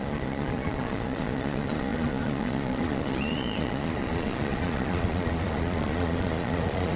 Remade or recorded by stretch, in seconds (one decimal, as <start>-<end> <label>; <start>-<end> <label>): 0.0-7.0 remade